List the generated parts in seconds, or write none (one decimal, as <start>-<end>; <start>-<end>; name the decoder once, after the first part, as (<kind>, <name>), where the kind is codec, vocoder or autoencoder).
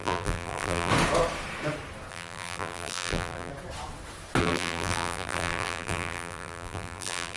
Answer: 0.0-0.9 (vocoder, BigVGAN v2); 2.1-3.5; 4.4-7.4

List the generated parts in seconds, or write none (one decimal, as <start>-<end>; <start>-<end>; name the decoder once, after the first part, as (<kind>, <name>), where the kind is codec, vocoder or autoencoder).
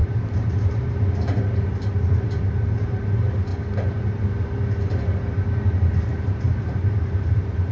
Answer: 0.0-3.5 (vocoder, BigVGAN v2); 5.9-7.7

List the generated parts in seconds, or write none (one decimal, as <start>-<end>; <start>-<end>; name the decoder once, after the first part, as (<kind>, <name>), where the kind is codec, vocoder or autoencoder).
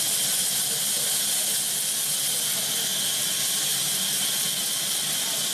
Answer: none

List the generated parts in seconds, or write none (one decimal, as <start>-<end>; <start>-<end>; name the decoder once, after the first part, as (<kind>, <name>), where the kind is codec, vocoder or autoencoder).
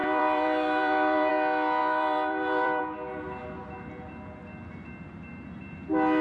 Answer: 0.0-1.3 (vocoder, BigVGAN v2); 1.8-2.8